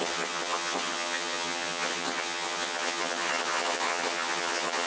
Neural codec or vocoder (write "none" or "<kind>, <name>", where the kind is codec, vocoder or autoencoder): vocoder, HiFi-GAN